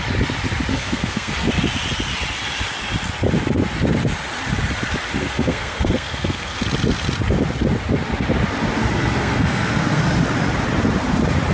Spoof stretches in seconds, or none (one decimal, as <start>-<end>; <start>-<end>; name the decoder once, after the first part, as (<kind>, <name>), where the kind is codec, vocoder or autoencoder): 0.7-1.5 (codec, SNAC); 5.2-6.6; 9.2-10.0